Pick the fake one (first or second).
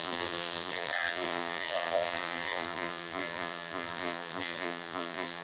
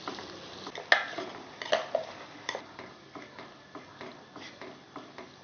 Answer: first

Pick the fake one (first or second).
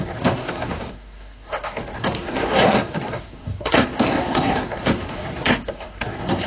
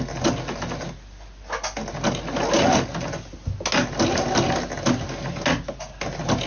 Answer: first